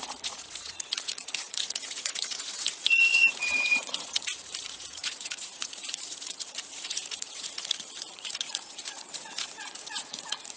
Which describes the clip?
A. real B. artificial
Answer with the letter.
B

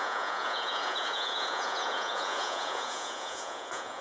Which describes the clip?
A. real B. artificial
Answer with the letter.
B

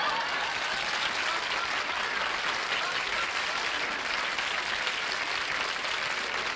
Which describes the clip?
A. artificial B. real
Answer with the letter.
B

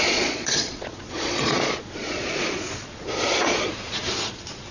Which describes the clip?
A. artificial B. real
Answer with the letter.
A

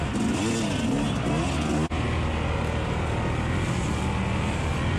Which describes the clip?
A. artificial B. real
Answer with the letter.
B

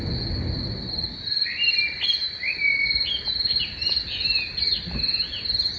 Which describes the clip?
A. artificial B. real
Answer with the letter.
B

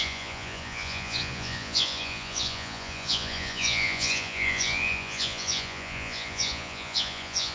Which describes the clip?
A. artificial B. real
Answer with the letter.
A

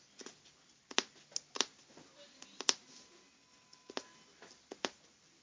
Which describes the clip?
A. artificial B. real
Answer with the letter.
B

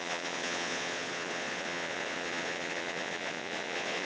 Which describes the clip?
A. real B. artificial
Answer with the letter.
B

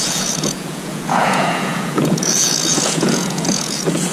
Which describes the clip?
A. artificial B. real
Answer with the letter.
A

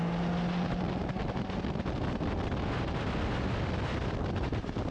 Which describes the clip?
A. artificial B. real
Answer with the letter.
B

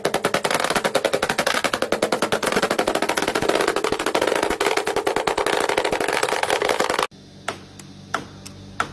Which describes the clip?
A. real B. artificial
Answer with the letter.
A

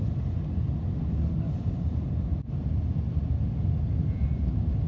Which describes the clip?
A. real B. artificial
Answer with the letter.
A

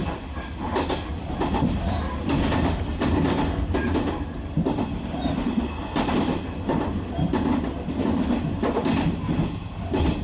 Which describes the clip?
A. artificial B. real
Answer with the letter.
B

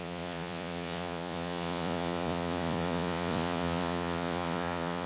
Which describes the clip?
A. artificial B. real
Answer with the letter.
A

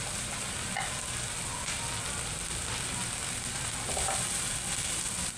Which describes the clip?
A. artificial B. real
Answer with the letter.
B